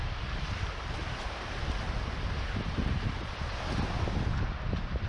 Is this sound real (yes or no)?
yes